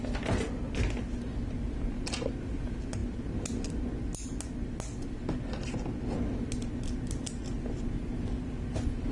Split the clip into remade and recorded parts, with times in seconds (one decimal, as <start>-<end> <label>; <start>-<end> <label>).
0.0-9.1 recorded